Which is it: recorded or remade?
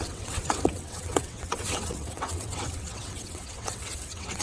remade